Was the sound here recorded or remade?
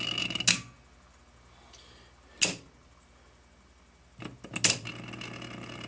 recorded